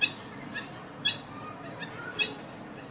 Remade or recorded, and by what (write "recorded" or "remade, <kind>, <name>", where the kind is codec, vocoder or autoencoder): remade, vocoder, BigVGAN v2